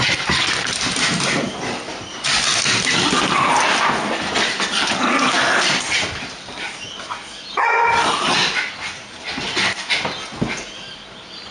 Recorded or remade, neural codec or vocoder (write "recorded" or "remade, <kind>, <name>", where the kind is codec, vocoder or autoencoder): recorded